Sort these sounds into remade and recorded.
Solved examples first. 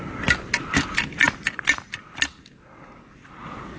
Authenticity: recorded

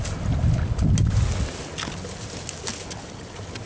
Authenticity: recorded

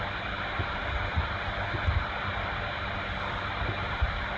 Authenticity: recorded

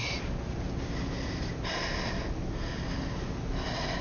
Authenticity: recorded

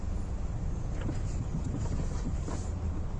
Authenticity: recorded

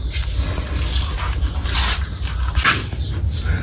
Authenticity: recorded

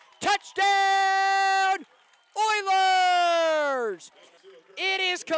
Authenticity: recorded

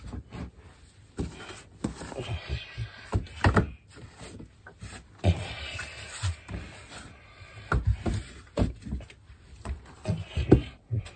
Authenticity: recorded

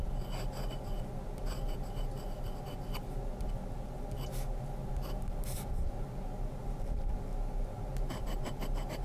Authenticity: recorded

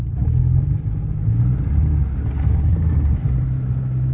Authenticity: recorded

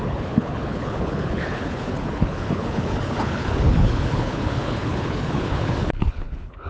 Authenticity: remade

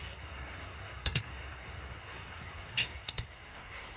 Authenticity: remade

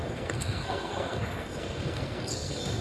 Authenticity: remade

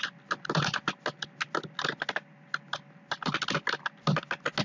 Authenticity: recorded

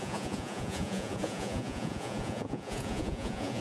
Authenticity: remade